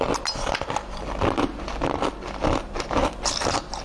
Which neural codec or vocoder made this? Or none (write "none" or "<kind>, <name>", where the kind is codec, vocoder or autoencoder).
none